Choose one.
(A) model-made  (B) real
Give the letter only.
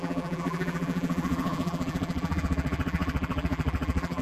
A